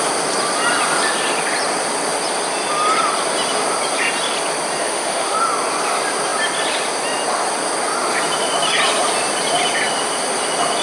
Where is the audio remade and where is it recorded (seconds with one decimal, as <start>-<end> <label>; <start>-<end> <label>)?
0.0-4.8 recorded; 4.8-5.4 remade; 5.4-10.8 recorded